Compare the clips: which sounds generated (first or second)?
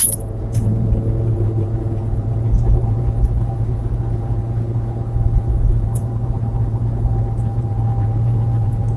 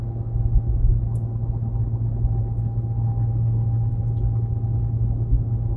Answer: first